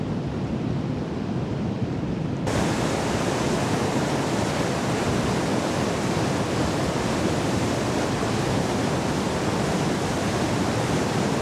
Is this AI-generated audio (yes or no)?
yes